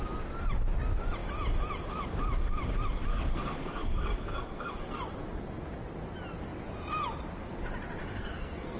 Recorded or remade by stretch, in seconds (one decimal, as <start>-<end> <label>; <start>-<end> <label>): 0.0-3.1 recorded; 3.1-5.0 remade; 5.0-8.0 recorded; 8.0-8.8 remade